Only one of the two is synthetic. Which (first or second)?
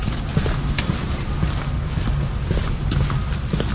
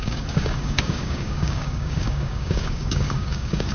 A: second